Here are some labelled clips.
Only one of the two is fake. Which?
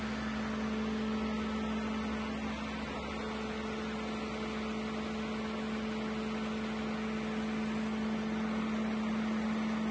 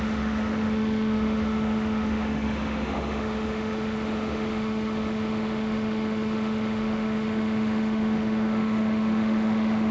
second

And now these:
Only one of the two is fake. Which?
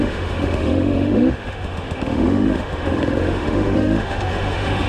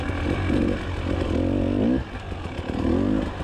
first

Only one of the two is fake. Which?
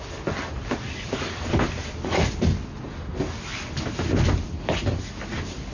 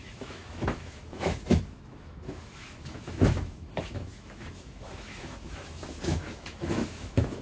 second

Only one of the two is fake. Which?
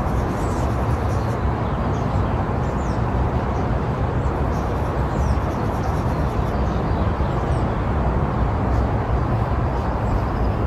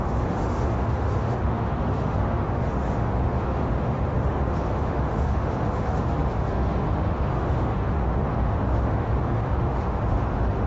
second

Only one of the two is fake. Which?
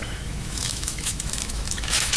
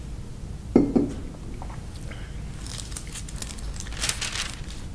first